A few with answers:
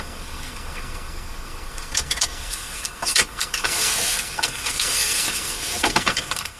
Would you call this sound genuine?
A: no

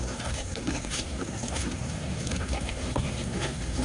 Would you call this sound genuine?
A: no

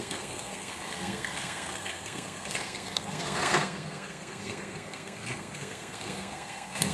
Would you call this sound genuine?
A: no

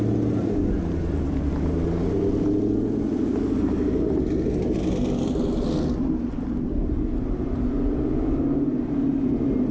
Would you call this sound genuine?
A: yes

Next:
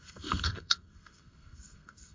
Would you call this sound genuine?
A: no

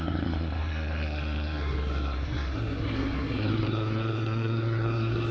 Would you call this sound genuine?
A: no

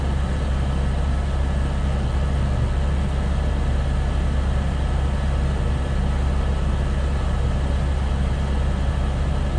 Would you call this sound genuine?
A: yes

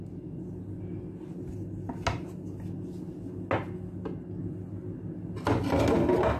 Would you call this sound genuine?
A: yes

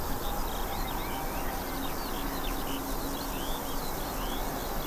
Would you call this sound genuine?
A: yes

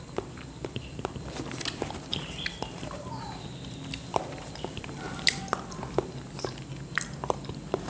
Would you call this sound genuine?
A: yes